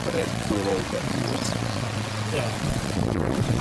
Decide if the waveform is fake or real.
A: fake